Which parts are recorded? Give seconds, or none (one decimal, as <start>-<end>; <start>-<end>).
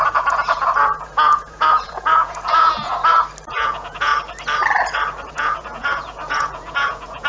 2.9-3.5; 4.1-5.3